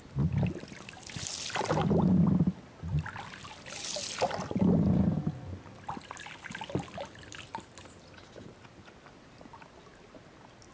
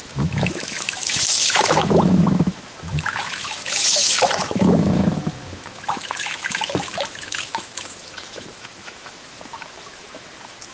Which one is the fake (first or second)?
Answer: second